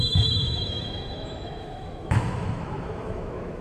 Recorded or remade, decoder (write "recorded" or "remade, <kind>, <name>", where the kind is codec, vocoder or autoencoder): remade, autoencoder, DAC-VAE